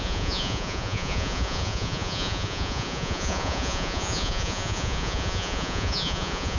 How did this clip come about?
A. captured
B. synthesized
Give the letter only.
B